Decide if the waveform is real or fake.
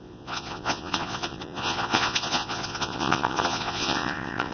fake